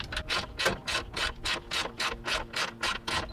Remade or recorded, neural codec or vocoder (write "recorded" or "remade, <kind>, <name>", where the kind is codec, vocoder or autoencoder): recorded